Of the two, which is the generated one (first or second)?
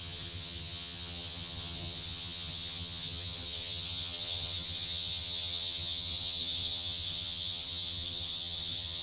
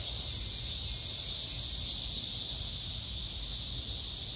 first